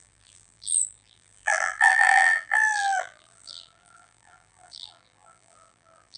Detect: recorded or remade remade